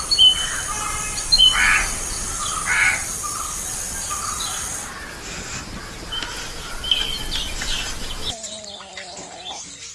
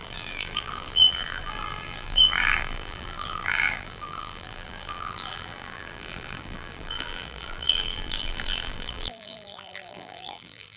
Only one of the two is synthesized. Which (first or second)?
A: second